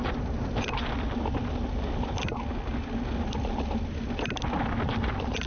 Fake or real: real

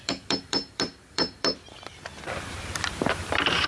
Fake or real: fake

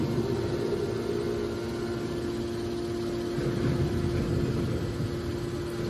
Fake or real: real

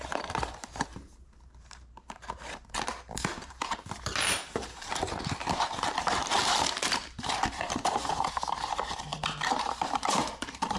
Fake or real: fake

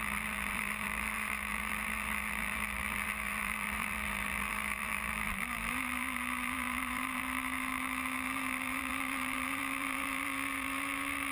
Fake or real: fake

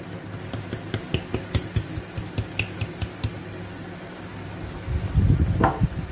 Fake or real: real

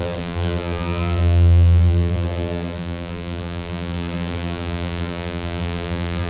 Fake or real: fake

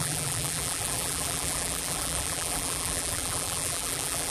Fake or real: fake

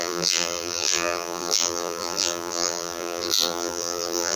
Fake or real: fake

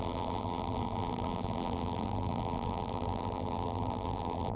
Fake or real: fake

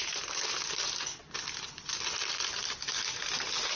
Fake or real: real